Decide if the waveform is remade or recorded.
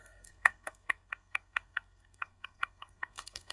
remade